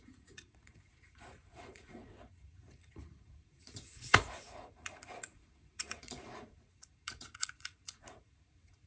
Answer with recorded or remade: remade